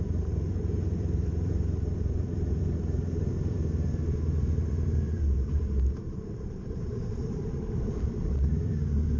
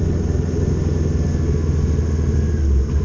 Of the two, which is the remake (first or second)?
first